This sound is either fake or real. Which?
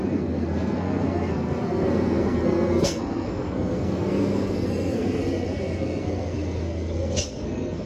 fake